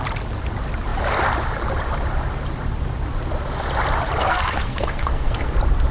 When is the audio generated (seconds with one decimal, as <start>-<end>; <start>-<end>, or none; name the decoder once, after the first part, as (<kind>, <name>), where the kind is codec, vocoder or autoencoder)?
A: 4.2-5.5 (codec, SNAC)